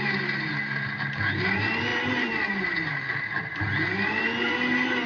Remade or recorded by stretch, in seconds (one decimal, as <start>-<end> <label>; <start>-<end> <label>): 0.0-5.1 recorded